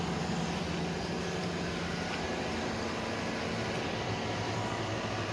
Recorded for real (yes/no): yes